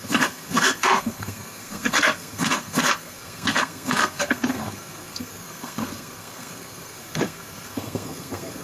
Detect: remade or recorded remade